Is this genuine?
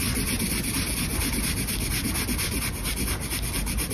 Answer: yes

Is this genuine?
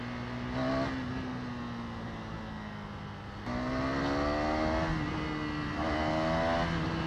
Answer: yes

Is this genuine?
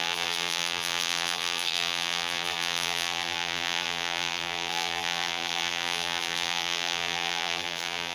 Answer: no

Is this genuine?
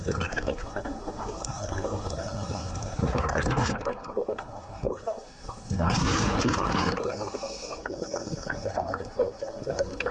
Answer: no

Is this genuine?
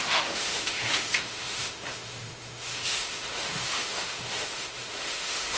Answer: no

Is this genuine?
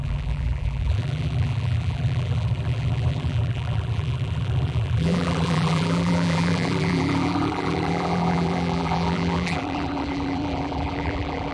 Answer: no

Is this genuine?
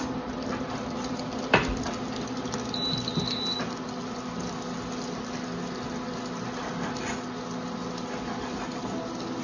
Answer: yes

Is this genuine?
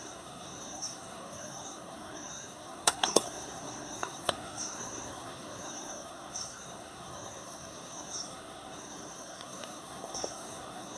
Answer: no